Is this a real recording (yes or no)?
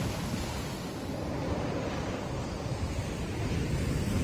no